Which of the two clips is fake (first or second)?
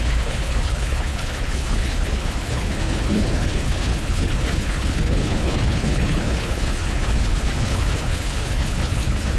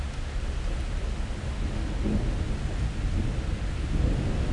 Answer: first